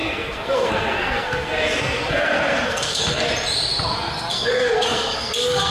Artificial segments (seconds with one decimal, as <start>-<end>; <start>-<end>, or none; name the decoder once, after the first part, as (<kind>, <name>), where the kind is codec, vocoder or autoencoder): 0.0-3.3 (codec, SNAC); 4.3-5.7